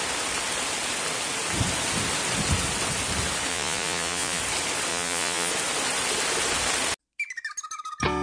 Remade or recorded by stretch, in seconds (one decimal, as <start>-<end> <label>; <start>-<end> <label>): 0.0-3.5 recorded; 3.5-4.4 remade; 4.4-4.9 recorded; 4.9-5.5 remade; 5.5-8.2 recorded